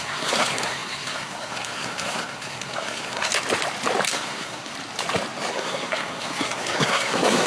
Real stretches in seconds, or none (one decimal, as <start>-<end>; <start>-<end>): 3.3-4.1; 4.7-5.5